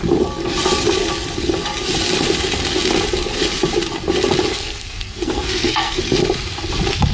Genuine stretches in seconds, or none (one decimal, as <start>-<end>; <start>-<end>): 0.0-4.5; 6.0-7.1